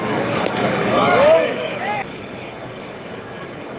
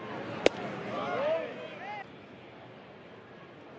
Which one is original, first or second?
second